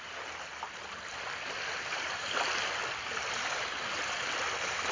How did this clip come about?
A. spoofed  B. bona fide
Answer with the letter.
B